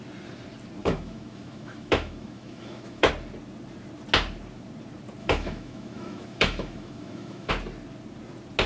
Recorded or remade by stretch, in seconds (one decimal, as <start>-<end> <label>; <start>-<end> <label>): 0.0-0.8 recorded; 0.8-3.1 remade; 3.1-5.2 recorded; 5.2-7.5 remade; 7.5-8.7 recorded